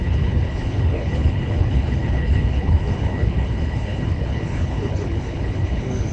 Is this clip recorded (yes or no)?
no